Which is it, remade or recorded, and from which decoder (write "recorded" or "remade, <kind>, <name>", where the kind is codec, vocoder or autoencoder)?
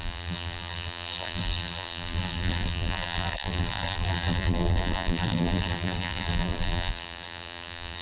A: remade, vocoder, BigVGAN v2